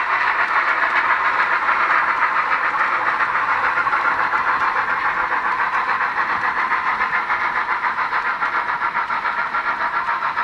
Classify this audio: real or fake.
fake